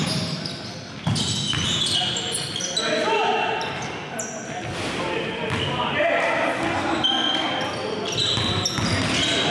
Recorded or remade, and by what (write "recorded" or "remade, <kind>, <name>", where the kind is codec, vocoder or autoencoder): recorded